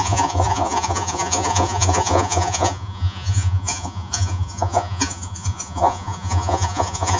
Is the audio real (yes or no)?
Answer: no